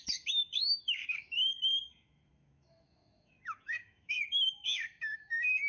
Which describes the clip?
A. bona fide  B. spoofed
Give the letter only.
B